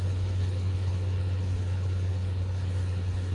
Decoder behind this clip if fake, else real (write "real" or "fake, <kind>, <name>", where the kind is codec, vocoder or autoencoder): fake, codec, HILCodec